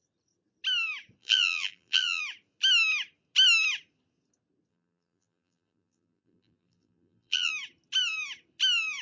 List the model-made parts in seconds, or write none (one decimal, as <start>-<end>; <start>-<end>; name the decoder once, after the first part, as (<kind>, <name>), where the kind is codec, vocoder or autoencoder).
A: 1.2-2.2 (vocoder, BigVGAN v2); 4.7-7.5